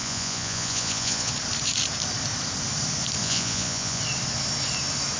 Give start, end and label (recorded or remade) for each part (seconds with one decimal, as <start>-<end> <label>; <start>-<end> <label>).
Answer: 0.0-1.3 remade; 1.3-3.2 recorded; 3.2-4.0 remade; 4.0-5.2 recorded